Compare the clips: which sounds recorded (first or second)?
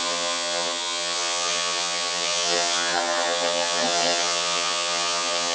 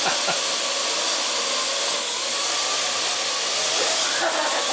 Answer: second